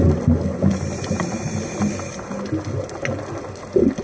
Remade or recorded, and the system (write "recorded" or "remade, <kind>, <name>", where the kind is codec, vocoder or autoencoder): recorded